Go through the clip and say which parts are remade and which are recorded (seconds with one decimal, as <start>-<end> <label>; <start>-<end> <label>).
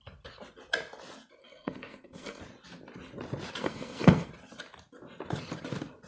0.0-1.4 recorded; 1.4-2.4 remade; 2.4-3.6 recorded; 3.6-4.3 remade; 4.3-6.1 recorded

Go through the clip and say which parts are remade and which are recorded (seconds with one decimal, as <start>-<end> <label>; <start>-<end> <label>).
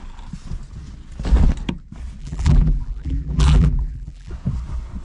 0.0-2.2 recorded; 2.2-4.3 remade; 4.3-5.0 recorded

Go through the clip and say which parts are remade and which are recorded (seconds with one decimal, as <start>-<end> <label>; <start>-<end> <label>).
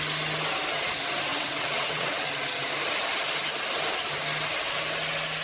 0.0-1.3 recorded; 1.3-2.3 remade; 2.3-5.4 recorded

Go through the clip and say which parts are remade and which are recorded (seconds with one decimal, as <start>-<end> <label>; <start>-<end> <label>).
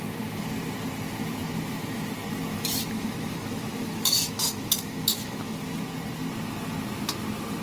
0.0-2.5 recorded; 2.5-5.8 remade; 5.8-7.6 recorded